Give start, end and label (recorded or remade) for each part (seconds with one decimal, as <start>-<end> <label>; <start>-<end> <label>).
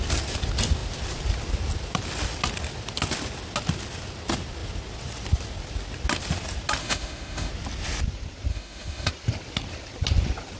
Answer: 0.0-6.8 recorded; 6.8-7.5 remade; 7.5-8.5 recorded; 8.5-9.1 remade; 9.1-10.6 recorded